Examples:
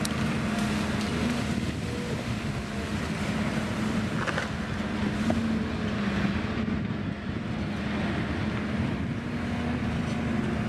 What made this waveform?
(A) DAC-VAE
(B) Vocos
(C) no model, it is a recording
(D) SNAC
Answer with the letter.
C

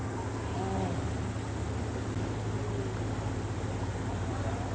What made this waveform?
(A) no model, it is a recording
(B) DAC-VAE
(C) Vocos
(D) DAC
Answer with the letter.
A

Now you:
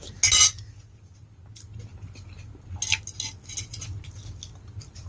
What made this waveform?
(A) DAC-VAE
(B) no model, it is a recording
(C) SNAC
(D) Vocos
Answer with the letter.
B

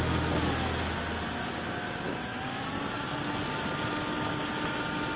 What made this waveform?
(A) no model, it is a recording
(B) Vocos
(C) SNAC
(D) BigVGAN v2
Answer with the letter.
A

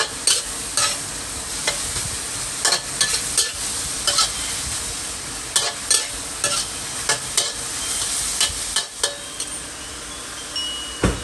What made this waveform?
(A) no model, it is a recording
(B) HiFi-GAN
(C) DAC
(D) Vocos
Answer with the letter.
A